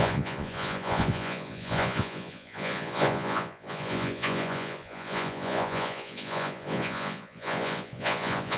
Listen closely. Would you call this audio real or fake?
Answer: fake